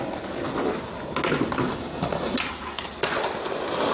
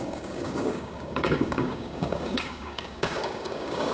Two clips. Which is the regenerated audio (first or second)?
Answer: second